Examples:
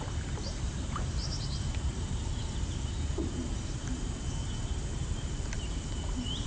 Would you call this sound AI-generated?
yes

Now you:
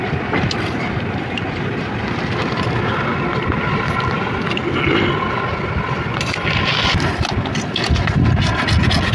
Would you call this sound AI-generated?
no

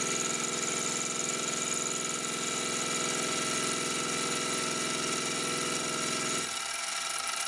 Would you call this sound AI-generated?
no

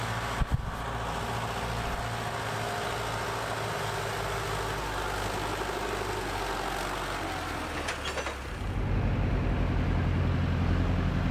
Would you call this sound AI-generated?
no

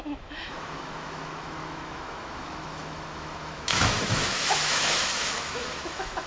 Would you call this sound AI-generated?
yes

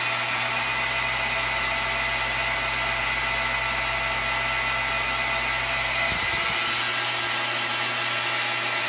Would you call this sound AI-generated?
no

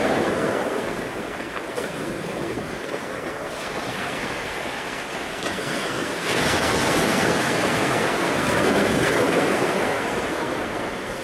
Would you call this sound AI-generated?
yes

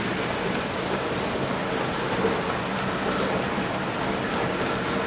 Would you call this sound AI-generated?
no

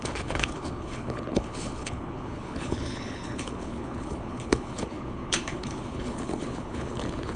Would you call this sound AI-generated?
yes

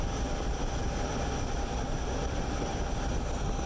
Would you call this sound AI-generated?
no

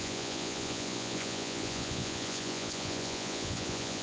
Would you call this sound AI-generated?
yes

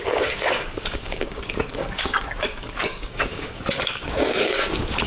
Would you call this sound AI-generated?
yes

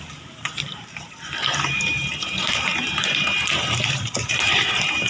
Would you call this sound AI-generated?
yes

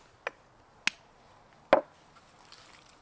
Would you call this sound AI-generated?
no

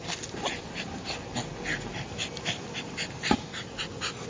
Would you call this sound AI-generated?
no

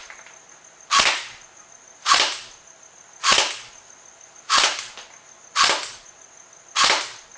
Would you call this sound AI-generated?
no